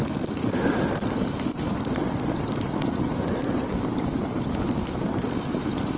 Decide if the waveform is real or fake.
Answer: real